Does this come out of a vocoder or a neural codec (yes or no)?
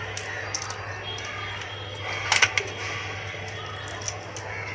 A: no